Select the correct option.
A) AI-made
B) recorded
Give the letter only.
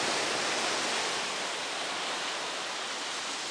B